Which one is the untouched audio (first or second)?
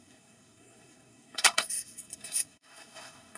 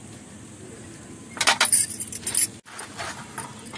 second